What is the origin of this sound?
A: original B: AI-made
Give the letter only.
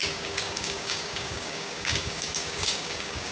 B